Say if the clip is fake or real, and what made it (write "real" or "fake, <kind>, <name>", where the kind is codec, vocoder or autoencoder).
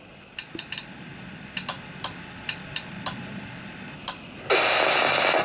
real